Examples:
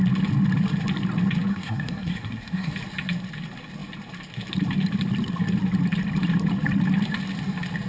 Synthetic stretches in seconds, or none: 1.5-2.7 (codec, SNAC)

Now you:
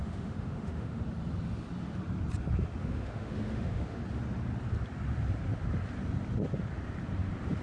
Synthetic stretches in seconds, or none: 0.0-1.0 (autoencoder, DAC-VAE); 2.8-4.0

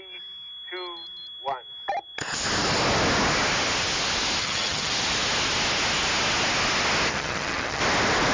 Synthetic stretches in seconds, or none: 4.4-4.9 (vocoder, HiFi-GAN); 7.1-7.8

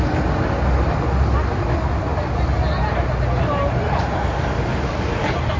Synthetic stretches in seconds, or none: none